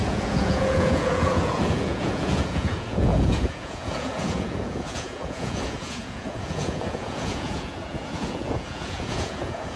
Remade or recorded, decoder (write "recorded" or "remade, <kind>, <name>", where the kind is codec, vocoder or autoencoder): remade, vocoder, Vocos